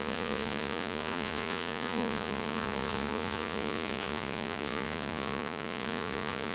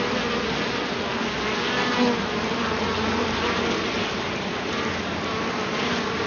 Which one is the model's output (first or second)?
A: first